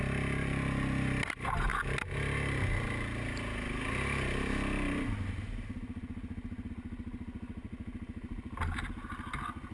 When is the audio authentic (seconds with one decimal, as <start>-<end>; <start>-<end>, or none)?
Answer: 0.0-9.7